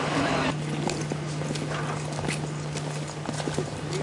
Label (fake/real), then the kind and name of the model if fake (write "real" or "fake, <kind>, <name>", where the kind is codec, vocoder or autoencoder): real